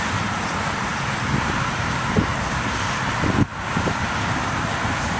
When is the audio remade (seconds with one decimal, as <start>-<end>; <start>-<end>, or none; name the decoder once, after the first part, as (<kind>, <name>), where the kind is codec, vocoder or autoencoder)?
0.0-0.9 (vocoder, BigVGAN v2); 1.4-2.3; 3.7-5.2